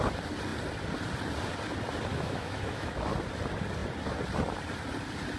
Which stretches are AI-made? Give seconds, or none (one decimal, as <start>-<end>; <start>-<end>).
2.1-3.1